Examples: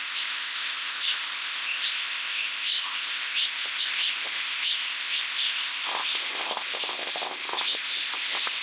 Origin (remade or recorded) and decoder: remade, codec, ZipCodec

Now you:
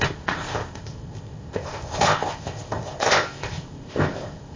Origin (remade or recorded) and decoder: remade, codec, ZipCodec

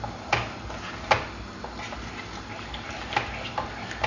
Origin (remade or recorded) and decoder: recorded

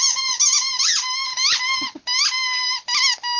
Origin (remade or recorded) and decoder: recorded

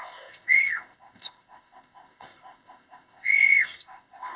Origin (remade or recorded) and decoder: remade, codec, ZipCodec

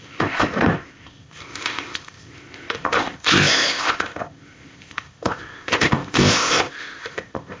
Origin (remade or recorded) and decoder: remade, codec, ZipCodec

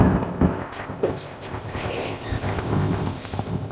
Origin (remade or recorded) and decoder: remade, codec, ZipCodec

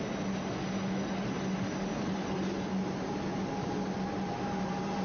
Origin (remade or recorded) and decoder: recorded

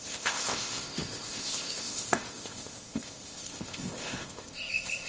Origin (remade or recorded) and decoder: remade, codec, ZipCodec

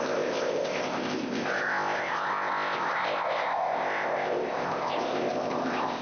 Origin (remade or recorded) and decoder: remade, codec, ZipCodec